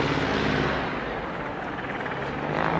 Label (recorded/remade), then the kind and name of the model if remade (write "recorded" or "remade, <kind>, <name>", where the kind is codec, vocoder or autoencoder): recorded